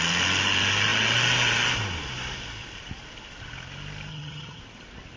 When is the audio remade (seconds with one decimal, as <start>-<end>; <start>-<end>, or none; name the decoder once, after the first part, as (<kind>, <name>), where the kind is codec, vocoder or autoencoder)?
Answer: 4.1-4.6 (vocoder, HiFi-GAN)